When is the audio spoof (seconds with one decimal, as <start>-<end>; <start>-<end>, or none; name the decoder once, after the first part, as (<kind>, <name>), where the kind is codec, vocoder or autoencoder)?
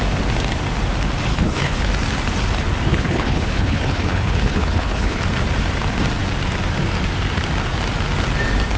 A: 1.3-1.9 (codec, HILCodec); 2.9-5.2